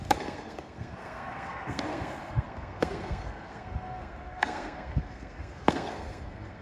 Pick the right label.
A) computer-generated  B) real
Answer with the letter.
A